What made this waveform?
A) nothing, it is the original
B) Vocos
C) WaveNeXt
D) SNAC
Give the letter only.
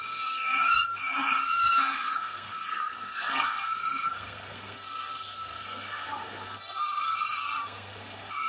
D